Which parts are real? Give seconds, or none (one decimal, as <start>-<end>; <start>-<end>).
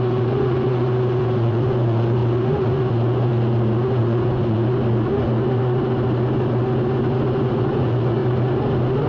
3.3-4.0; 4.6-7.4; 8.2-9.1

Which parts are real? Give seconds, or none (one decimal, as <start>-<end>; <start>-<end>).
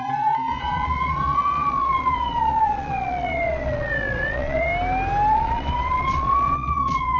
4.7-5.3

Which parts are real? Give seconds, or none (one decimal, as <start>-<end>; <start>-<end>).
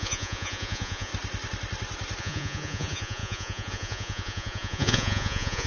1.1-2.2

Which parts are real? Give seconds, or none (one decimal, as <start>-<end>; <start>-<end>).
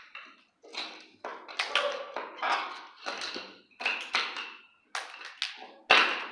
0.0-6.3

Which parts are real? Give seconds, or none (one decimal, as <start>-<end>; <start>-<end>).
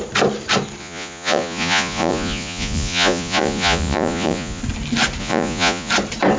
0.0-0.8; 4.6-5.2; 5.9-6.4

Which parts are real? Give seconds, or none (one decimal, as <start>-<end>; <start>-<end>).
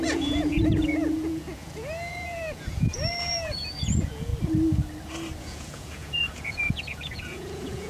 4.3-5.4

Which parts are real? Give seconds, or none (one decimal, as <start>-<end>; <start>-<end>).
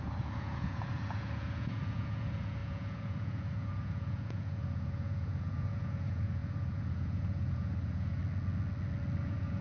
8.2-9.2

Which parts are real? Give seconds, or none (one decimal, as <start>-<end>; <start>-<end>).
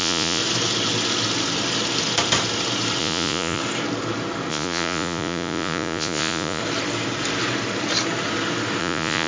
0.4-3.0; 3.6-4.5; 6.6-8.8